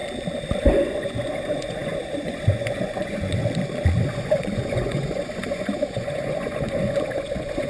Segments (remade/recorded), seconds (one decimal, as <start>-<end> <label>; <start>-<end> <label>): 0.0-0.6 recorded; 0.6-3.4 remade; 3.4-4.1 recorded; 4.1-7.7 remade